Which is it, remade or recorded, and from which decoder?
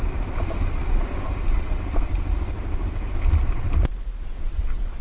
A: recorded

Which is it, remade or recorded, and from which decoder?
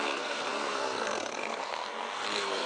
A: remade, codec, SNAC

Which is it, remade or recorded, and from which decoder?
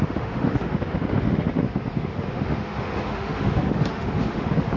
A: remade, autoencoder, DAC-VAE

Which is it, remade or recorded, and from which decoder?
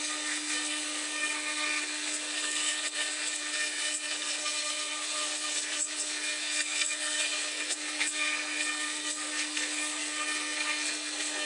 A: remade, codec, SNAC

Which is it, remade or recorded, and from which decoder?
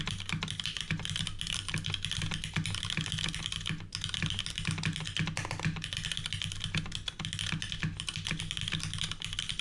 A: recorded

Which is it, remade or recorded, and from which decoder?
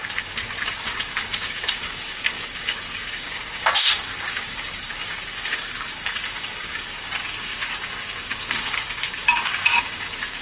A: remade, codec, DAC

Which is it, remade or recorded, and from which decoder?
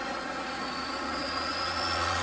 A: remade, vocoder, Vocos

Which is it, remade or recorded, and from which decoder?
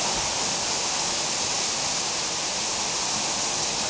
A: recorded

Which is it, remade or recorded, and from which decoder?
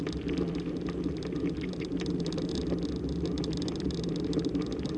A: recorded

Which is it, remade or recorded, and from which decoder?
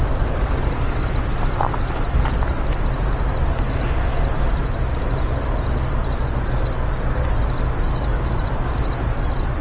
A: recorded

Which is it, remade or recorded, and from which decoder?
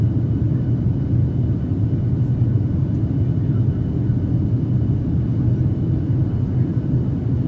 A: recorded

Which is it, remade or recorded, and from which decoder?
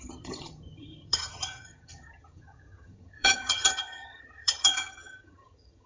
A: remade, vocoder, HiFi-GAN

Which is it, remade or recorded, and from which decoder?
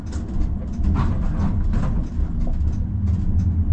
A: recorded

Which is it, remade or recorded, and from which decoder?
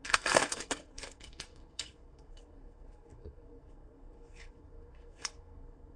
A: remade, codec, SNAC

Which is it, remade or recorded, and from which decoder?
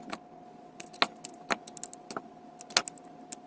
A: recorded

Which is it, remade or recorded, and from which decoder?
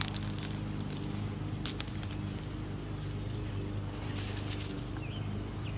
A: recorded